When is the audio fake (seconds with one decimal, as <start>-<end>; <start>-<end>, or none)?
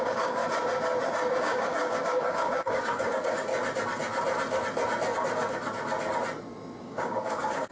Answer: 0.0-0.4; 1.4-3.5; 6.8-7.7